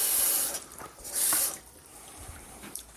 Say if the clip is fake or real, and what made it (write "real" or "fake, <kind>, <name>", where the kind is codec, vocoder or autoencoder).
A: fake, vocoder, BigVGAN v2